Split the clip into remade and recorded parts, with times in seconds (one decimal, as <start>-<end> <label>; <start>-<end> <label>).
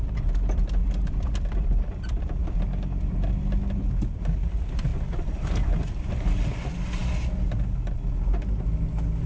0.0-0.8 recorded; 0.8-2.4 remade; 2.4-9.3 recorded